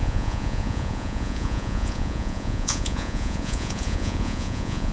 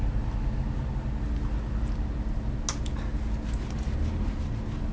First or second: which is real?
second